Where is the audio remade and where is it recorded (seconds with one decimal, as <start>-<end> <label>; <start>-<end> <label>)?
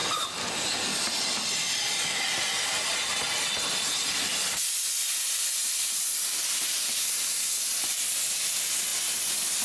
0.0-7.0 recorded; 7.0-7.6 remade; 7.6-9.6 recorded